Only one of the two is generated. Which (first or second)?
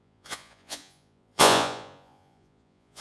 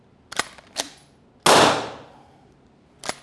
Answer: first